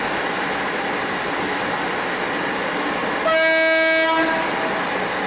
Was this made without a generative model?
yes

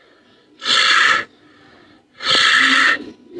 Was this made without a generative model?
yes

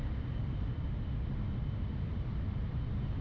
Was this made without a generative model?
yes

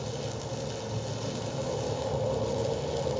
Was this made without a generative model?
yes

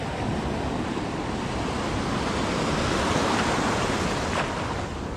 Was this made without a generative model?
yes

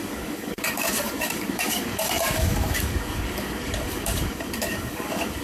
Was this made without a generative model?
no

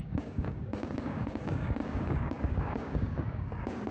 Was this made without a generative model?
no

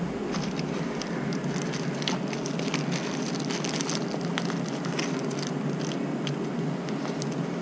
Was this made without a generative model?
yes